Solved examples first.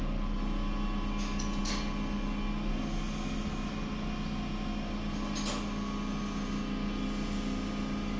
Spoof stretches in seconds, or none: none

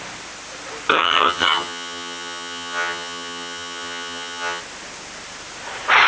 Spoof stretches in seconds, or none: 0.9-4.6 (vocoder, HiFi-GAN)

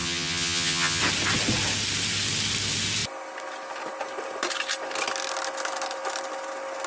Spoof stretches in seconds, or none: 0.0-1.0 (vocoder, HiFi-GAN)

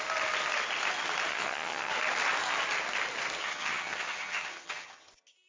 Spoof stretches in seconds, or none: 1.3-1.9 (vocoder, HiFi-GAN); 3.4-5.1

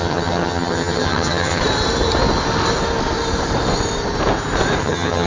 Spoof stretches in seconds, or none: 0.0-1.6 (vocoder, HiFi-GAN); 4.8-5.3

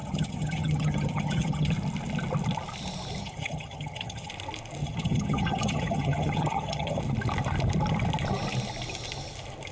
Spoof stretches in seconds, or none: 0.0-1.7 (vocoder, HiFi-GAN); 3.2-4.3; 4.8-7.0

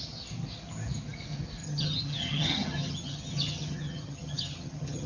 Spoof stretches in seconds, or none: 1.6-5.1 (vocoder, HiFi-GAN)